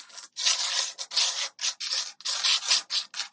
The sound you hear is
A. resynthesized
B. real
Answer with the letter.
B